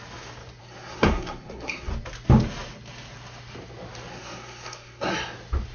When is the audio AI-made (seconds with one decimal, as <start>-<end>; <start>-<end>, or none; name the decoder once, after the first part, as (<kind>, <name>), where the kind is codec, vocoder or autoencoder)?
0.6-1.9 (codec, SNAC); 4.1-5.1